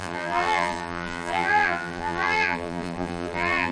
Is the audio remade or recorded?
remade